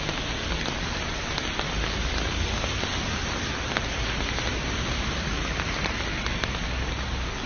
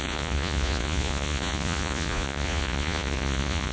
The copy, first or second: second